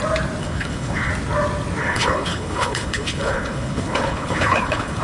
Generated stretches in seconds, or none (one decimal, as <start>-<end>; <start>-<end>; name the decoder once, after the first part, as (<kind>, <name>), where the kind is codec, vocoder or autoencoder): 0.4-1.1 (codec, HILCodec); 1.8-5.0